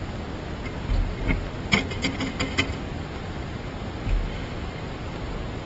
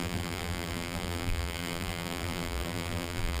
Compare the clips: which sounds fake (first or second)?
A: second